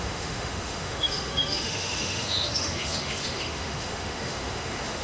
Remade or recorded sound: remade